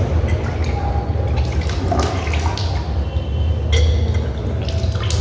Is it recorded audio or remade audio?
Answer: recorded